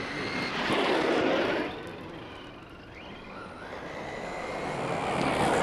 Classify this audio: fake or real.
real